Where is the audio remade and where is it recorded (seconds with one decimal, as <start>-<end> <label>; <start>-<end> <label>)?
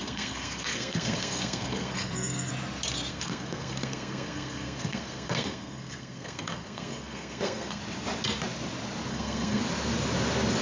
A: 0.0-2.5 remade; 2.5-3.1 recorded; 3.1-7.8 remade; 7.8-9.1 recorded; 9.1-9.6 remade; 9.6-10.6 recorded